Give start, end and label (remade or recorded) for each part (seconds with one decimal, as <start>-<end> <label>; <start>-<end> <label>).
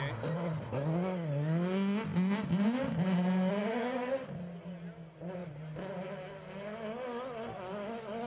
0.0-8.3 recorded